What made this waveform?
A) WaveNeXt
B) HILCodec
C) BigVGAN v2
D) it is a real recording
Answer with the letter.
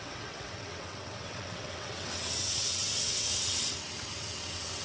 A